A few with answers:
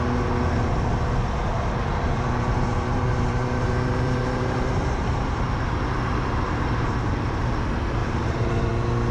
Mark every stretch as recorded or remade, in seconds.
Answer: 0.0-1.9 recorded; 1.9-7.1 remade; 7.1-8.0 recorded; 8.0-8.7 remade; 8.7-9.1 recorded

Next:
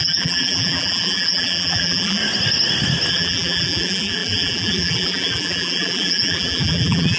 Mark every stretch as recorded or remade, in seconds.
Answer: 0.0-2.2 remade; 2.2-3.1 recorded; 3.1-7.2 remade

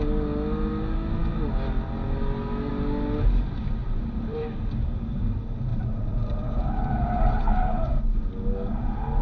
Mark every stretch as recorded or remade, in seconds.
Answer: 0.0-3.8 recorded; 3.8-4.6 remade; 4.6-5.7 recorded; 5.7-8.0 remade; 8.0-9.2 recorded

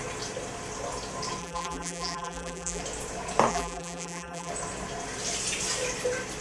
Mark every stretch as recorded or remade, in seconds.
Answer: 0.0-1.4 recorded; 1.4-2.8 remade; 2.8-3.5 recorded; 3.5-4.5 remade; 4.5-6.4 recorded